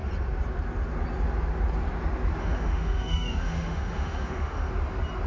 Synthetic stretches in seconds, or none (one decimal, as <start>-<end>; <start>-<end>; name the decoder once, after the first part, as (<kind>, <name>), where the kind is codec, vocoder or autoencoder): 2.4-4.7 (autoencoder, DAC-VAE)